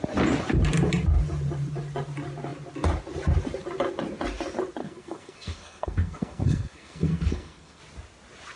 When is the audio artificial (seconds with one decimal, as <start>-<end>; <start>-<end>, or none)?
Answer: 4.8-7.8